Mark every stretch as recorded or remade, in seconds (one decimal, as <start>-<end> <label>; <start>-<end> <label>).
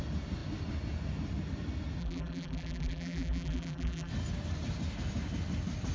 0.0-2.0 recorded; 2.0-4.1 remade; 4.1-5.9 recorded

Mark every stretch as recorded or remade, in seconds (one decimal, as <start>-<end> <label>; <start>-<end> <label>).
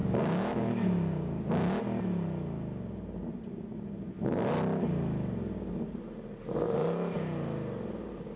0.0-1.8 remade; 1.8-8.4 recorded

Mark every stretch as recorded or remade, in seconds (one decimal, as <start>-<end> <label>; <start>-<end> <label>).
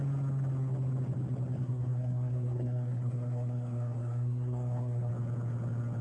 0.0-1.6 recorded; 1.6-5.1 remade; 5.1-6.0 recorded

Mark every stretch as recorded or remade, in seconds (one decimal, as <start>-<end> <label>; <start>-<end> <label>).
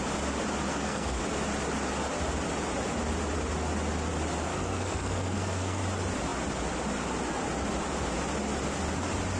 0.0-0.7 recorded; 0.7-1.2 remade; 1.2-4.5 recorded; 4.5-5.8 remade; 5.8-9.4 recorded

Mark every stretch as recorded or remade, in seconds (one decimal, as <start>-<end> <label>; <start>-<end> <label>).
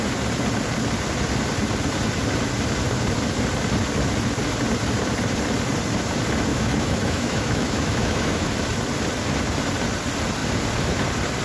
0.0-6.5 recorded; 6.5-8.5 remade; 8.5-11.4 recorded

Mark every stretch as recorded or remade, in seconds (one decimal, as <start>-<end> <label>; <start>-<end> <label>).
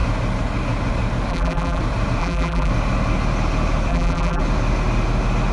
0.0-1.3 recorded; 1.3-1.8 remade; 1.8-2.2 recorded; 2.2-2.7 remade; 2.7-3.9 recorded; 3.9-4.4 remade; 4.4-5.5 recorded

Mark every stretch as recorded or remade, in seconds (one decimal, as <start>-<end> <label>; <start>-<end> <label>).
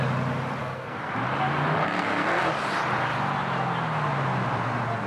0.0-0.6 recorded; 0.6-1.1 remade; 1.1-1.8 recorded; 1.8-2.4 remade; 2.4-5.1 recorded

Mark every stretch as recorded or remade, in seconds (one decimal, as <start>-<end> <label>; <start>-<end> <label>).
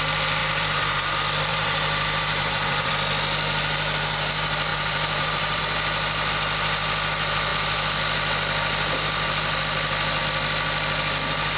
0.0-0.4 recorded; 0.4-1.1 remade; 1.1-1.5 recorded; 1.5-2.9 remade; 2.9-4.7 recorded; 4.7-5.6 remade; 5.6-11.6 recorded